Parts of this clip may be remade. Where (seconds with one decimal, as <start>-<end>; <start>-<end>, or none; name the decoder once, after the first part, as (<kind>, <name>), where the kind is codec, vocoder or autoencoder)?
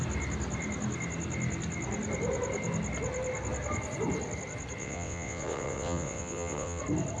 4.8-6.8 (vocoder, WaveNeXt)